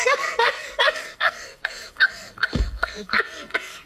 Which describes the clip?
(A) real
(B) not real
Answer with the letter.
B